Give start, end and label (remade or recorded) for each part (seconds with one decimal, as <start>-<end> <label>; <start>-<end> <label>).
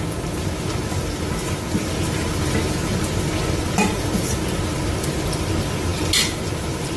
0.0-7.0 recorded